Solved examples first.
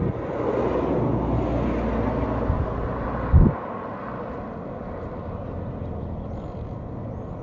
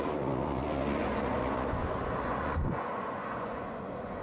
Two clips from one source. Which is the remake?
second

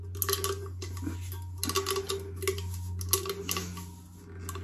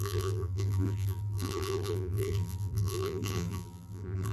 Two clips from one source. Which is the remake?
second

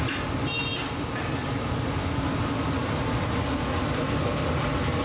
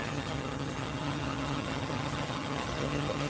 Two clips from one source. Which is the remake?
second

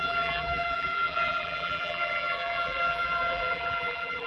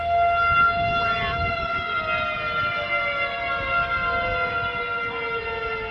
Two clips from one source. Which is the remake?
first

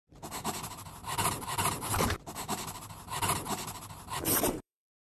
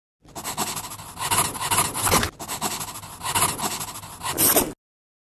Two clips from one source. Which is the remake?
first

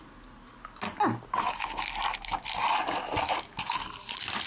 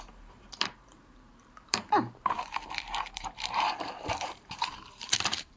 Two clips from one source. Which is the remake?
second